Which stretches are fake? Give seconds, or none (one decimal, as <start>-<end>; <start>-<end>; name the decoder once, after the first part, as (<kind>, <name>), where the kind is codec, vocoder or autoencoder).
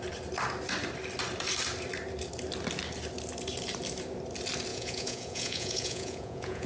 4.7-6.7 (vocoder, Vocos)